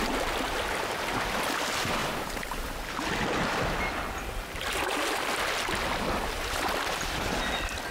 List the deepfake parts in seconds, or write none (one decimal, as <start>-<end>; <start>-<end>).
2.0-2.9